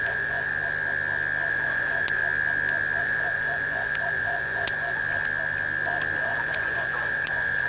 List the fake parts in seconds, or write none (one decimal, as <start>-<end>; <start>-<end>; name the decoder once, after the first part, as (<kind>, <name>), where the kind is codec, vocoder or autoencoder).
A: 0.0-0.5 (vocoder, Vocos); 1.5-2.2; 3.0-5.0; 6.2-7.7